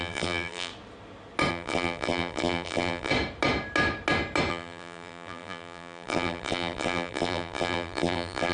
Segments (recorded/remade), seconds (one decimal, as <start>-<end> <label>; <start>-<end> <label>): 0.0-0.7 remade; 0.7-1.5 recorded; 1.5-3.1 remade; 3.1-4.5 recorded; 4.5-8.5 remade